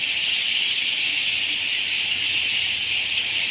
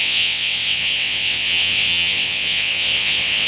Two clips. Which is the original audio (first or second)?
first